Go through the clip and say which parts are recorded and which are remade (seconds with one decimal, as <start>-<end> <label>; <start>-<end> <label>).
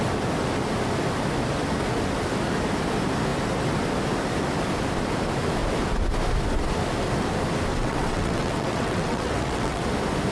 0.0-7.7 recorded; 7.7-9.8 remade; 9.8-10.3 recorded